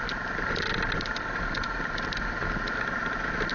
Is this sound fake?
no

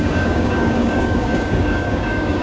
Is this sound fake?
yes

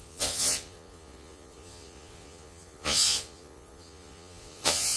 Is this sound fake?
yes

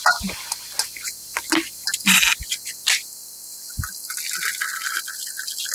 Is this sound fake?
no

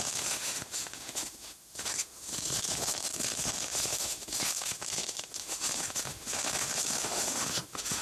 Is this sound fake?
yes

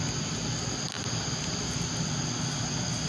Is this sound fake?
no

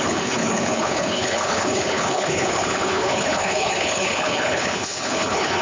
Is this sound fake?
yes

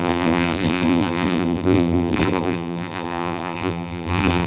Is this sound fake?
yes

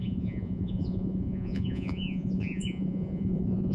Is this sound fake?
yes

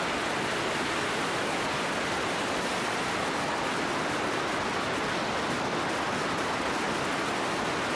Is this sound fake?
no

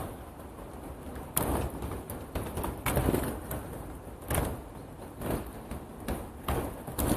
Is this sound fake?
no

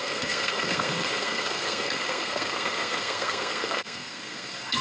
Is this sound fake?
yes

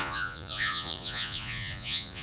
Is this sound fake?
yes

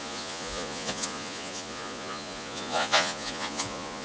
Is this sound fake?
yes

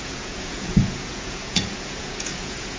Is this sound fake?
yes